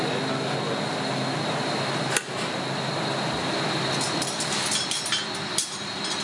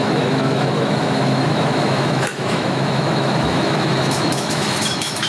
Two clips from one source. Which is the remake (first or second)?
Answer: second